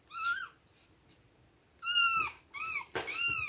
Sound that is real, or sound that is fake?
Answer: real